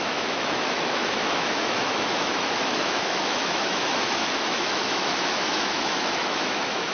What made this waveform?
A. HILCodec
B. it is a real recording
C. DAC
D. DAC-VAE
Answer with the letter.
D